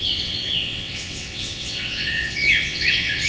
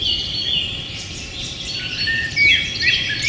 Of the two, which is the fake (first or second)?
first